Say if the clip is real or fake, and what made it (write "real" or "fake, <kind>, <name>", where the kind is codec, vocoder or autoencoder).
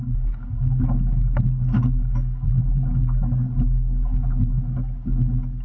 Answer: real